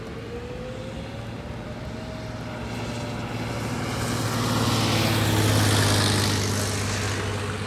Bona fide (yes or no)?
yes